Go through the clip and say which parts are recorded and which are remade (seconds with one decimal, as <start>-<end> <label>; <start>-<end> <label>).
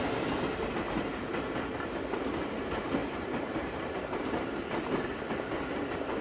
0.0-3.0 recorded; 3.0-5.1 remade; 5.1-6.2 recorded